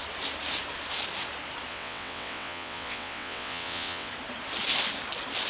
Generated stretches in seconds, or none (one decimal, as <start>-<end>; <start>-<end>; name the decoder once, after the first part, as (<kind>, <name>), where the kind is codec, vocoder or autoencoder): 1.7-4.1 (vocoder, WaveNeXt)